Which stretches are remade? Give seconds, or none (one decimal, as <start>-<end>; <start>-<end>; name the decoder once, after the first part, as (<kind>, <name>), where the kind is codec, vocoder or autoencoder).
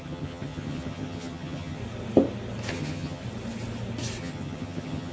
0.0-1.8 (vocoder, HiFi-GAN); 2.7-3.2; 4.2-5.1